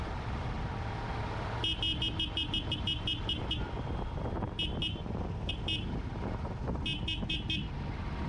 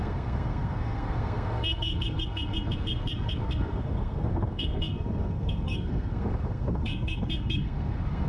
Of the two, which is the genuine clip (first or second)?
first